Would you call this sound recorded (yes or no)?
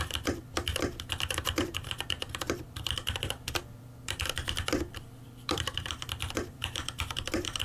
no